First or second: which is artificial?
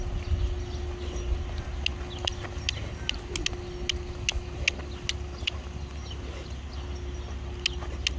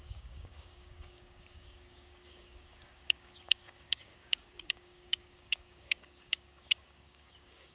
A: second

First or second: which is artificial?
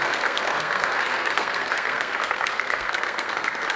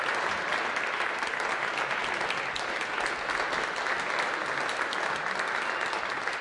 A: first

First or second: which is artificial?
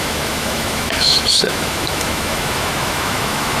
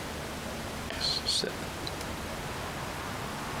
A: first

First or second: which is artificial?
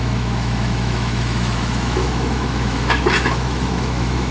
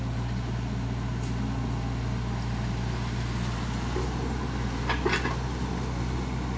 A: first